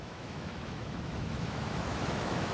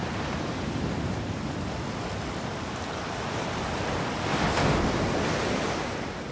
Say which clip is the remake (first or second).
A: first